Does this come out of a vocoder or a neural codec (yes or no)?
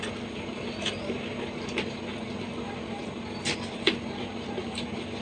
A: yes